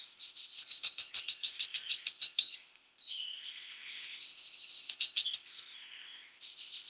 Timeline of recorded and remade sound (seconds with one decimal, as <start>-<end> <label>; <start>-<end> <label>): 0.0-6.9 remade